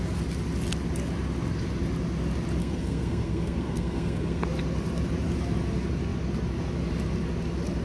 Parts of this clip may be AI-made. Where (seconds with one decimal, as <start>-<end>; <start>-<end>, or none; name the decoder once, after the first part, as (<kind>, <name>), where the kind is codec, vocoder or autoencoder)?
2.6-4.4 (codec, SNAC)